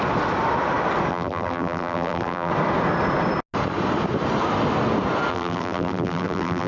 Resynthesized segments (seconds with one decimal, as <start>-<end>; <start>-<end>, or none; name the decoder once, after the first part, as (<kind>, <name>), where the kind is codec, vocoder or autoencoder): 1.1-2.5 (vocoder, BigVGAN v2); 5.3-6.7

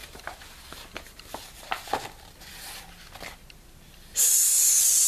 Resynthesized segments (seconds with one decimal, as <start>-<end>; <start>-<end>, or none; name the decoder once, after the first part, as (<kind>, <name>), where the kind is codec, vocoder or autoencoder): 0.0-2.8 (vocoder, BigVGAN v2)

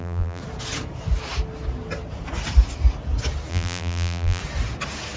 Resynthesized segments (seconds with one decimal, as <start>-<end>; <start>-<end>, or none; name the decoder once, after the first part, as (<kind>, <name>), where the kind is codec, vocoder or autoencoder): 0.0-0.4 (vocoder, BigVGAN v2); 3.5-4.4

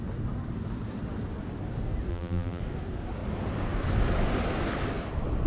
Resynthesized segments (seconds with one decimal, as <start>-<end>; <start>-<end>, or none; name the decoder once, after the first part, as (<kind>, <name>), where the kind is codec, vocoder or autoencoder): 2.1-2.6 (vocoder, BigVGAN v2)

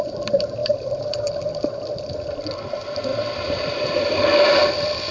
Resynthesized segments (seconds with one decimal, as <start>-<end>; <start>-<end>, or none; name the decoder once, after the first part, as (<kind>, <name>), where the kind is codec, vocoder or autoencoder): 0.6-1.3 (vocoder, BigVGAN v2); 3.1-4.2

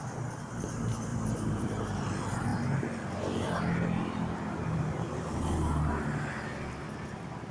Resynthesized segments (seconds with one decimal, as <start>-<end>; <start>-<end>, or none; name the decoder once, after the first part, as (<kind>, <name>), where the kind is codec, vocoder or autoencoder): 1.1-1.8 (vocoder, BigVGAN v2)

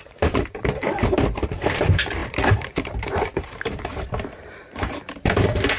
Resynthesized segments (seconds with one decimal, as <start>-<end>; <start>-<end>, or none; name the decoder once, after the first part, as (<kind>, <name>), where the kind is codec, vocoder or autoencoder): 0.0-5.8 (vocoder, BigVGAN v2)